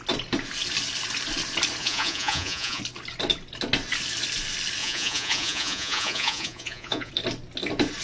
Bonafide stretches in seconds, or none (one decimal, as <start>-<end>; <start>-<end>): 0.0-1.8; 2.8-4.8; 7.1-8.0